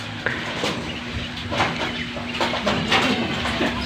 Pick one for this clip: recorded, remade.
recorded